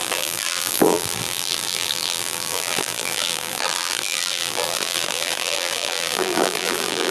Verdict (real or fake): fake